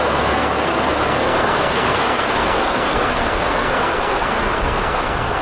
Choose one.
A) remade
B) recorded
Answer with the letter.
A